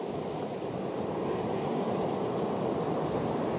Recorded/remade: recorded